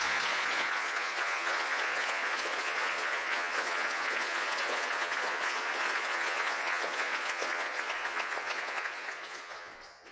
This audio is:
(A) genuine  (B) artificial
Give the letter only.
B